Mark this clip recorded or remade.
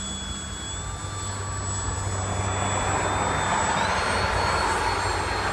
recorded